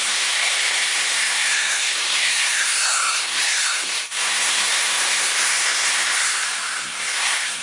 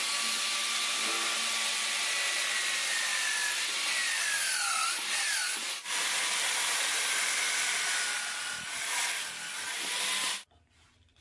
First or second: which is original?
second